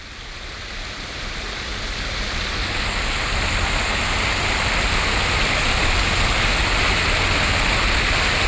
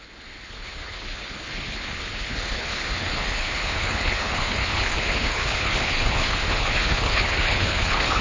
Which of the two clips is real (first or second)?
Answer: first